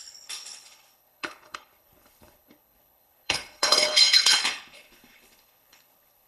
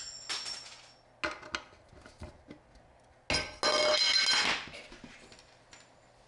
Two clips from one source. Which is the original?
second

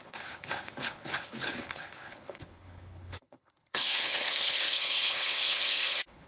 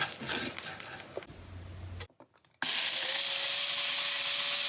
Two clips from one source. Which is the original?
second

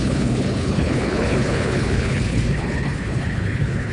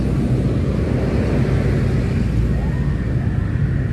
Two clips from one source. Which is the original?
second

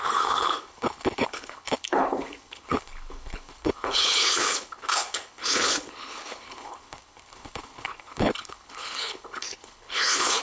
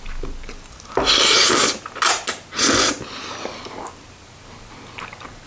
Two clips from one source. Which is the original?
second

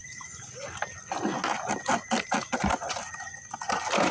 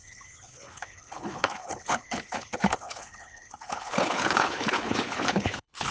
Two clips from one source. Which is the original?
first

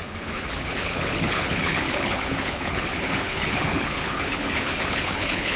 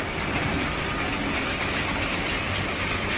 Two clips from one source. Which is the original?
second